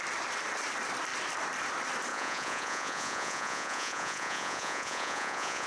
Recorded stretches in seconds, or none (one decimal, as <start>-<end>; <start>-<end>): 0.0-2.1